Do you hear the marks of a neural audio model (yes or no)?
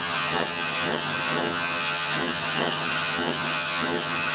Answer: yes